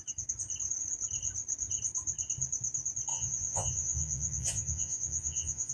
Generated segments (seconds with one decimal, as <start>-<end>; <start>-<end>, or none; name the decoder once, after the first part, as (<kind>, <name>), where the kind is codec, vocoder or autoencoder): 3.1-5.7 (vocoder, Vocos)